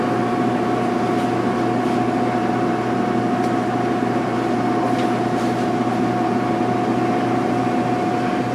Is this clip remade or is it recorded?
recorded